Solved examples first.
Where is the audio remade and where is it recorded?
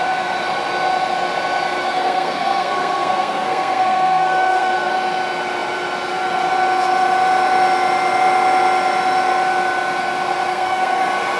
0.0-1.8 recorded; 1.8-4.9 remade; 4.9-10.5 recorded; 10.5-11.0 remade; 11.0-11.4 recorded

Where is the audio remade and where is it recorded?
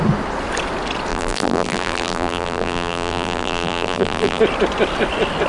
0.0-1.1 recorded; 1.1-4.4 remade; 4.4-5.5 recorded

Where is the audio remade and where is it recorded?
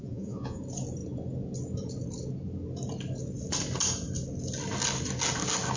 0.0-0.6 remade; 0.6-5.8 recorded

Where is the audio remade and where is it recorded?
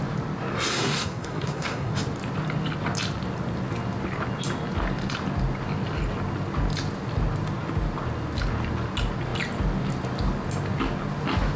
0.0-0.7 recorded; 0.7-1.9 remade; 1.9-11.6 recorded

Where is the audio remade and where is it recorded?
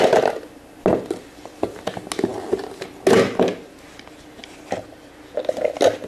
0.0-6.1 recorded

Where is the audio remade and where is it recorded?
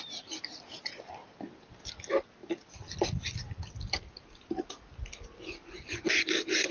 0.0-6.7 recorded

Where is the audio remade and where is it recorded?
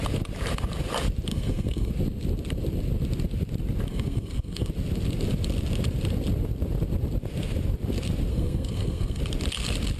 0.0-1.3 recorded; 1.3-1.9 remade; 1.9-3.9 recorded; 3.9-4.7 remade; 4.7-8.3 recorded; 8.3-9.2 remade; 9.2-10.0 recorded